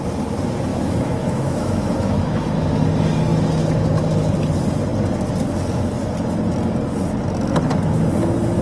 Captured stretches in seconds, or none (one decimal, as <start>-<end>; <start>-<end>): 0.0-0.7; 2.8-8.6